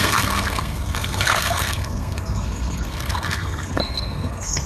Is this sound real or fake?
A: fake